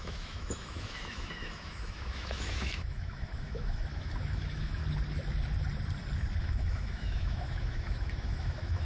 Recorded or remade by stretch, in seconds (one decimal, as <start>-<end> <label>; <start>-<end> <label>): 0.0-4.8 remade; 4.8-6.4 recorded; 6.4-8.8 remade